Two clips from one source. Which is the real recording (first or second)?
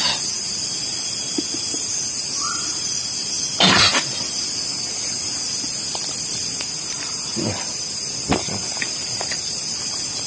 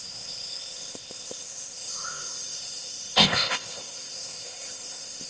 first